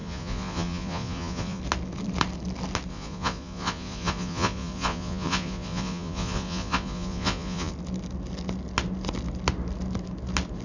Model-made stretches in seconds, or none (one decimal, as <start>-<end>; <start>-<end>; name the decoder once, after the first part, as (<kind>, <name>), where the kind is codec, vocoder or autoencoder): 0.0-1.6 (vocoder, Vocos); 2.9-7.7